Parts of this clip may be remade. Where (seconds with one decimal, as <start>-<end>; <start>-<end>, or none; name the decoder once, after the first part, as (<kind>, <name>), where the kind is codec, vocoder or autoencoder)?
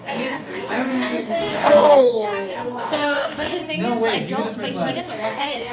0.0-3.6 (codec, DAC); 5.0-5.7